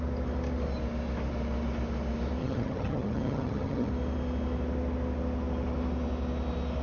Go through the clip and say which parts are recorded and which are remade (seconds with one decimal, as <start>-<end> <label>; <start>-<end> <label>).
0.0-2.4 recorded; 2.4-3.9 remade; 3.9-6.8 recorded